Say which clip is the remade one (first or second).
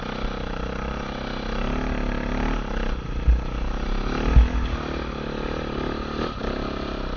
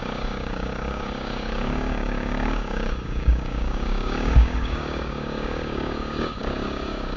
second